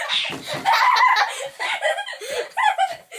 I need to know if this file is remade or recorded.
recorded